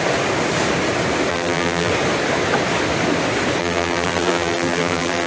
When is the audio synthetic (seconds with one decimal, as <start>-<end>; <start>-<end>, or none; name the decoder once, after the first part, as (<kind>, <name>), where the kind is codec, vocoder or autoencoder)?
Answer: 1.3-1.9 (vocoder, BigVGAN v2); 3.6-5.3